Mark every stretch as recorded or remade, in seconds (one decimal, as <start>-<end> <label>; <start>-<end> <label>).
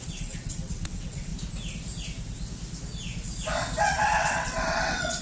0.0-1.3 remade; 1.3-3.8 recorded; 3.8-5.2 remade